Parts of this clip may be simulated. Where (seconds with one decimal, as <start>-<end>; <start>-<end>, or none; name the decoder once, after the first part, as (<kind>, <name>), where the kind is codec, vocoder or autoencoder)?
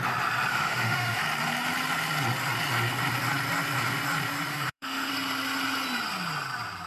0.5-1.2 (autoencoder, DAC-VAE); 4.5-5.1